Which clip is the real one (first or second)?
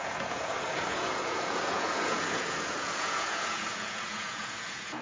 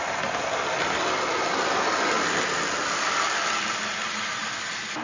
second